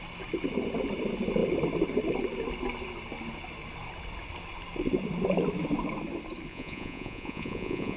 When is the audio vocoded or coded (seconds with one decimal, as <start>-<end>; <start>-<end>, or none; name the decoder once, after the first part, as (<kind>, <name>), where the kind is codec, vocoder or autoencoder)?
6.5-8.0 (vocoder, Vocos)